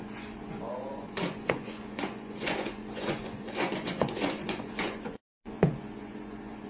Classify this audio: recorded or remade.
remade